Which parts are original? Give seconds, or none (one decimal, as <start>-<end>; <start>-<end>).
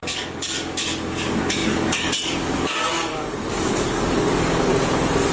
4.7-5.3